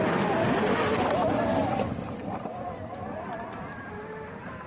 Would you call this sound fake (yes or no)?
no